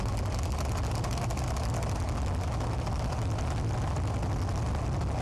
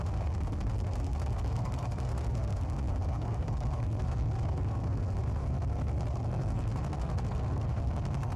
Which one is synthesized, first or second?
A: second